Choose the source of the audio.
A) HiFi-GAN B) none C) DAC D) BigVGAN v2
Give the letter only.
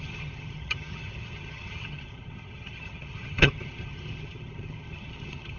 A